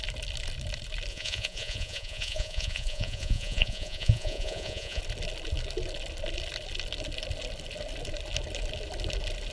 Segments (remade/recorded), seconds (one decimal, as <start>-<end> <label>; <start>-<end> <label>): 0.0-1.1 recorded; 1.1-5.0 remade; 5.0-9.5 recorded